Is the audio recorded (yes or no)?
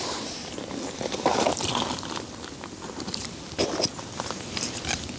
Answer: yes